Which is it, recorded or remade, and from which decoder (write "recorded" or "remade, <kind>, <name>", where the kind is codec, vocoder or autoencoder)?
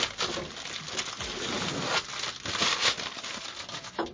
recorded